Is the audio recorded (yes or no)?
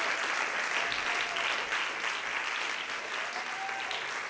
yes